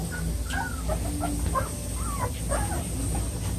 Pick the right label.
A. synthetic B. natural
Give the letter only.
B